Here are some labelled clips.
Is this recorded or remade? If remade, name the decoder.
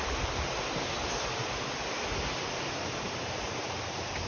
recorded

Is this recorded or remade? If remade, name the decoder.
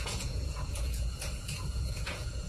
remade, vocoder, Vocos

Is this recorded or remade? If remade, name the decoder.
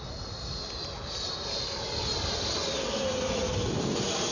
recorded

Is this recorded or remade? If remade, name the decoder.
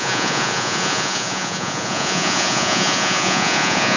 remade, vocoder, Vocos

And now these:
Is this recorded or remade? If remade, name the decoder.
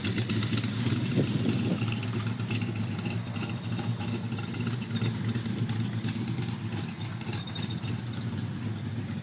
recorded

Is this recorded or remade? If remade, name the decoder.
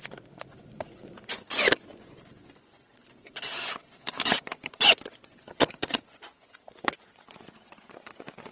remade, vocoder, Vocos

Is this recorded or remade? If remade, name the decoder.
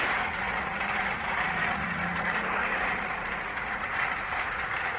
remade, vocoder, Vocos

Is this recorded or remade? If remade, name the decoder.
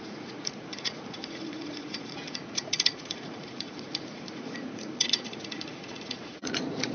remade, vocoder, Vocos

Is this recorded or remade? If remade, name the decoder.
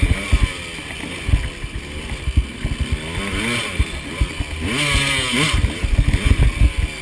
recorded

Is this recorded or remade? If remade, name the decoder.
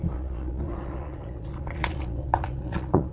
remade, vocoder, Vocos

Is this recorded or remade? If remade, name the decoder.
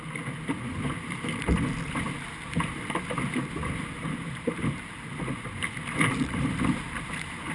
recorded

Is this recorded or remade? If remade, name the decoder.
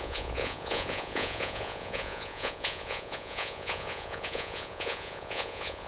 remade, vocoder, Vocos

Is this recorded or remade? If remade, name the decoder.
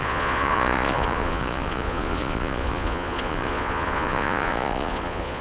remade, vocoder, Vocos